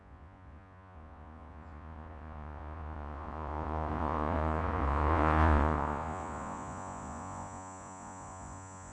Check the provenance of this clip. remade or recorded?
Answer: remade